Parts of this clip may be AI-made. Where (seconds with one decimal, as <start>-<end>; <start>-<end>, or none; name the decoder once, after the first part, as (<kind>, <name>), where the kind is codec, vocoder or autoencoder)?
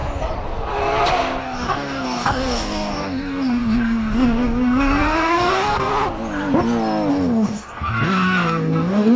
1.4-5.9 (codec, DAC); 7.1-9.2